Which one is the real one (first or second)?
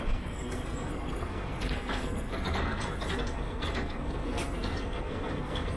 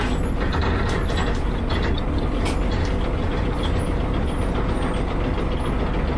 second